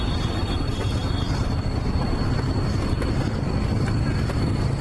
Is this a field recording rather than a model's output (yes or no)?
yes